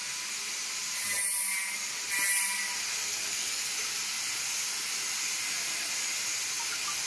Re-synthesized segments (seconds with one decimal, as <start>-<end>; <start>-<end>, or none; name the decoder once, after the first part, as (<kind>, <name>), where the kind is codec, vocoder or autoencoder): 3.1-3.7 (codec, SNAC)